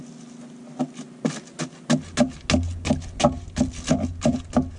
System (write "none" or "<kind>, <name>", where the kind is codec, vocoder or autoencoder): none